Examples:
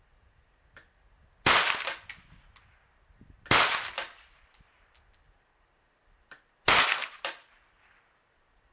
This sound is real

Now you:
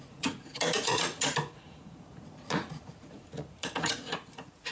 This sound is fake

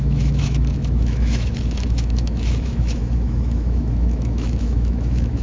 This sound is fake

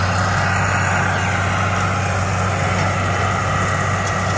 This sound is real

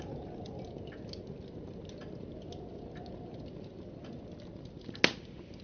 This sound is real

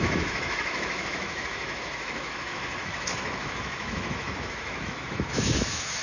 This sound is fake